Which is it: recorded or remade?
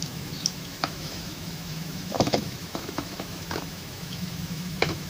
remade